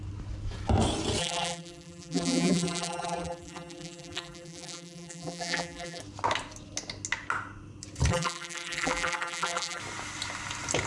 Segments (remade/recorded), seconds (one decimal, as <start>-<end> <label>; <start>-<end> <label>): 0.0-1.2 recorded; 1.2-6.0 remade; 6.0-8.1 recorded; 8.1-9.8 remade; 9.8-10.9 recorded

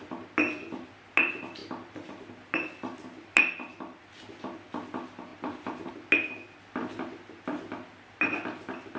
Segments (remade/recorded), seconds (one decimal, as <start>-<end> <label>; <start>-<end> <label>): 0.0-1.6 recorded; 1.6-4.0 remade; 4.0-5.3 recorded; 5.3-5.9 remade; 5.9-9.0 recorded

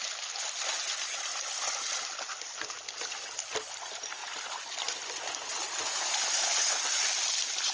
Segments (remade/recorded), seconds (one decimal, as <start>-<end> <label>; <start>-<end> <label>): 0.0-4.2 remade; 4.2-5.8 recorded; 5.8-7.7 remade

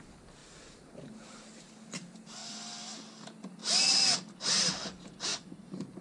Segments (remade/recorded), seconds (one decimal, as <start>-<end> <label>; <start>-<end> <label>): 0.0-0.4 recorded; 0.4-1.7 remade; 1.7-3.6 recorded; 3.6-4.7 remade; 4.7-5.3 recorded; 5.3-6.0 remade

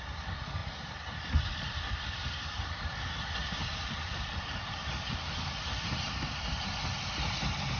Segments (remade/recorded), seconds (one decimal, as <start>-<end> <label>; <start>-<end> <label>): 0.0-3.4 recorded; 3.4-6.5 remade; 6.5-7.8 recorded

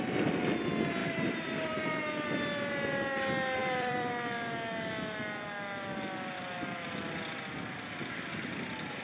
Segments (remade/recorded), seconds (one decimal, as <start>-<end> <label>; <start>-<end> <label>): 0.0-1.0 recorded; 1.0-2.0 remade; 2.0-3.6 recorded; 3.6-4.1 remade; 4.1-9.0 recorded

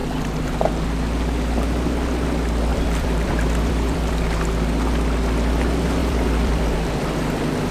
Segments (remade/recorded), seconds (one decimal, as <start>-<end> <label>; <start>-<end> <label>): 0.0-0.7 remade; 0.7-2.7 recorded; 2.7-4.1 remade; 4.1-6.0 recorded; 6.0-7.7 remade

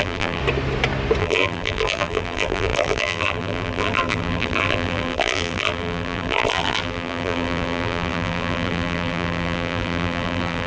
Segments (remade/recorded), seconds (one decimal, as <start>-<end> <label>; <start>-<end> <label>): 0.0-0.4 remade; 0.4-1.2 recorded; 1.2-10.7 remade